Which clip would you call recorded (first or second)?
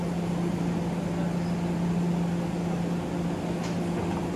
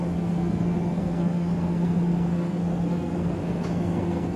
first